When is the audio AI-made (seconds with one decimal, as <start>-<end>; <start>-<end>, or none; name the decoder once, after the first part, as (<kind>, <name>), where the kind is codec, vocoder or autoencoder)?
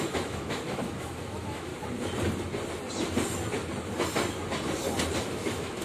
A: 0.0-1.7 (autoencoder, DAC-VAE); 5.2-5.8